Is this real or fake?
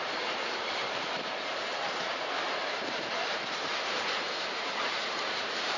fake